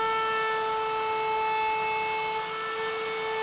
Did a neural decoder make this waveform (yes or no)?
no